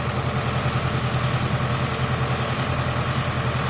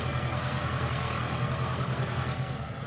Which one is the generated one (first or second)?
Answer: second